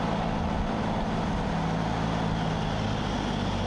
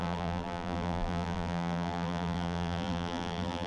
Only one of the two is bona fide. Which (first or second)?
first